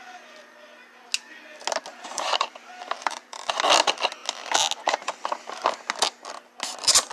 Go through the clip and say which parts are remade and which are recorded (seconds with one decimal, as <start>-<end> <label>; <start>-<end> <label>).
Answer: 0.0-1.9 recorded; 1.9-3.5 remade; 3.5-7.1 recorded